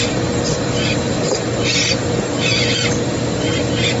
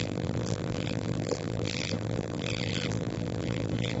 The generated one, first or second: second